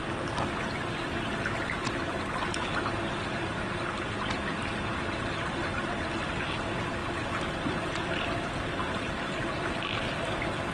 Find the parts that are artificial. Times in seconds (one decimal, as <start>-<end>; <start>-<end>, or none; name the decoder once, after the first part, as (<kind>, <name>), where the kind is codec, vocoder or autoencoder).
7.0-8.3 (vocoder, BigVGAN v2)